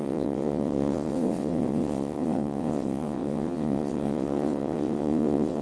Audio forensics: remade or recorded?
remade